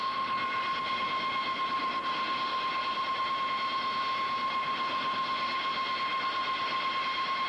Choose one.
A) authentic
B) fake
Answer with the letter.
A